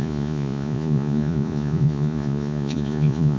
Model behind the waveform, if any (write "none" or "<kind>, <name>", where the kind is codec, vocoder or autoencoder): vocoder, Vocos